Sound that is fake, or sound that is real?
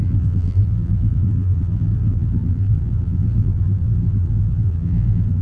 fake